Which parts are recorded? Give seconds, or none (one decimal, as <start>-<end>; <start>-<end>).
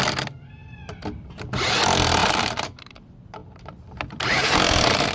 0.0-2.2; 3.0-3.4